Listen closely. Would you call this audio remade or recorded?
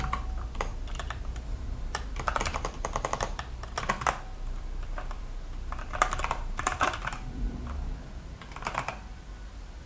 remade